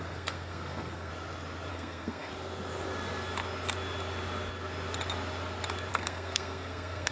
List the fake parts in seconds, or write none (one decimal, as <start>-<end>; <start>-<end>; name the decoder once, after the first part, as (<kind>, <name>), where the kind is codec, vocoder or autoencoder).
0.0-1.1 (codec, SNAC); 1.7-2.3; 5.9-7.1